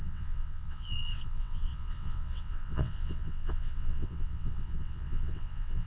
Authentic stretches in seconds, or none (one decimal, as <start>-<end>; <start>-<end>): none